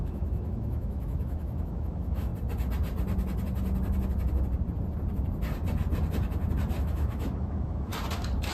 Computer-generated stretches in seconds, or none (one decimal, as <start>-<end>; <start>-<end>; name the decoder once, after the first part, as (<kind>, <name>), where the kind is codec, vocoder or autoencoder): 0.0-2.3 (autoencoder, DAC-VAE); 6.8-7.9